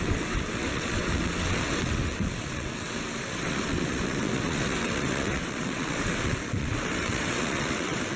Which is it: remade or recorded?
remade